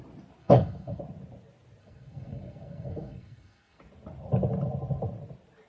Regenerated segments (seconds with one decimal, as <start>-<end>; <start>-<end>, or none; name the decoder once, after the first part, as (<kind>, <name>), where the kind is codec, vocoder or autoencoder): 0.4-1.0 (codec, SNAC); 1.8-3.8